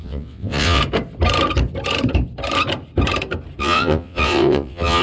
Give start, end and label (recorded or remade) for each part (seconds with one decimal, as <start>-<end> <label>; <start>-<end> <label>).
0.0-0.8 remade; 0.8-3.6 recorded; 3.6-5.0 remade